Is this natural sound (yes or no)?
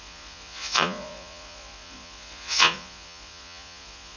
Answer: no